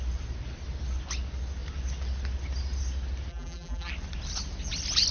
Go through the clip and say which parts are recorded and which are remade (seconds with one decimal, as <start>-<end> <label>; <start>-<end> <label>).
0.0-3.3 recorded; 3.3-3.9 remade; 3.9-5.1 recorded

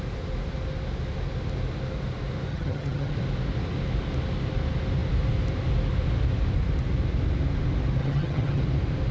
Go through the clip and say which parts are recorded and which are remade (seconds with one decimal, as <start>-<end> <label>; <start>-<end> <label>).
0.0-2.5 recorded; 2.5-3.1 remade; 3.1-8.0 recorded; 8.0-8.6 remade; 8.6-9.1 recorded

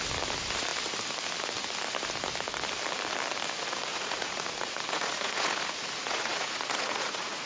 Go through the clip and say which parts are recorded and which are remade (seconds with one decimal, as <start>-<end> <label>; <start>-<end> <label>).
0.0-3.9 recorded; 3.9-7.5 remade

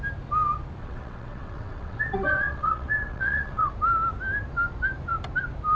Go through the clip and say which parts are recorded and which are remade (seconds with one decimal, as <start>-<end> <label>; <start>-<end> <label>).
0.0-0.8 recorded; 0.8-3.7 remade; 3.7-5.8 recorded

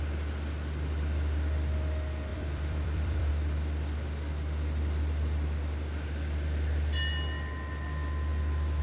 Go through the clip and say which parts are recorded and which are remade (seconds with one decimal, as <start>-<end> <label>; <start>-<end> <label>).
0.0-2.3 recorded; 2.3-3.3 remade; 3.3-8.8 recorded